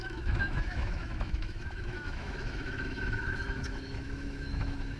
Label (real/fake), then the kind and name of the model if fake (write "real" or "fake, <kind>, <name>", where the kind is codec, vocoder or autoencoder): fake, autoencoder, DAC-VAE